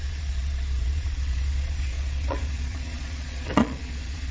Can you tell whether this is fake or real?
fake